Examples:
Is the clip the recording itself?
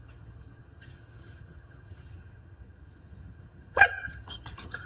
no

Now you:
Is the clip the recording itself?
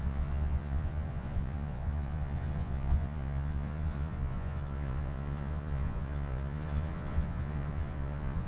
no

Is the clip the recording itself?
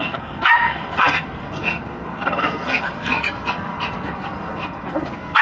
no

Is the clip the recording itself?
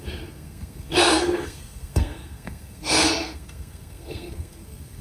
no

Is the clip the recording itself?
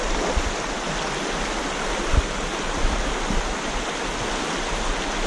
yes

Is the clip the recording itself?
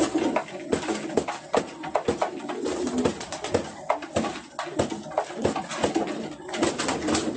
yes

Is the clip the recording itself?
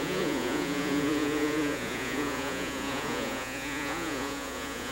no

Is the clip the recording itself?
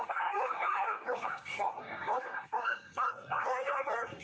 no